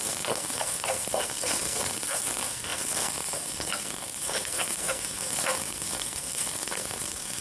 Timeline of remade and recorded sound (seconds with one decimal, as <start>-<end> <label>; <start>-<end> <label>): 0.0-7.4 remade